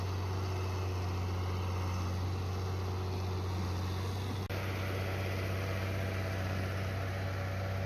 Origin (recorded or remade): recorded